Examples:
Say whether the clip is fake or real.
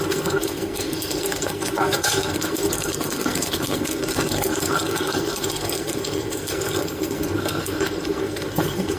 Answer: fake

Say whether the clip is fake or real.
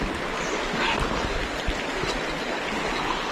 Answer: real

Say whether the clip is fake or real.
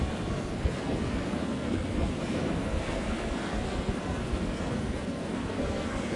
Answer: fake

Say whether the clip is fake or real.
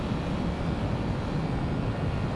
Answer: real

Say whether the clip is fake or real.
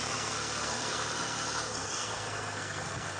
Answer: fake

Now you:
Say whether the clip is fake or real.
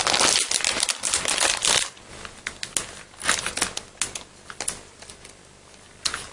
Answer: real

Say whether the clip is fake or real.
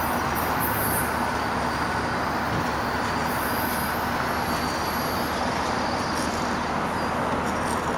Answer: real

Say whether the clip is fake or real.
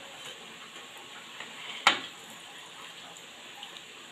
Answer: real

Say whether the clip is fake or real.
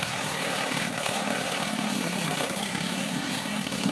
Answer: fake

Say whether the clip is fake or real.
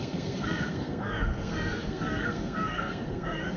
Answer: fake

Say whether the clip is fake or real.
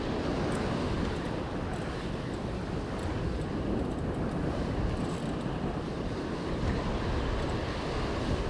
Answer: real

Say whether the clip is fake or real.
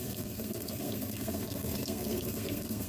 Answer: fake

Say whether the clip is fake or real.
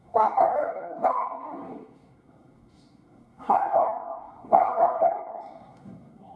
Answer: fake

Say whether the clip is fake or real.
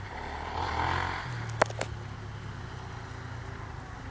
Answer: real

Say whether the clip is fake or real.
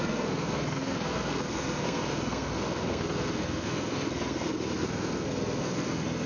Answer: fake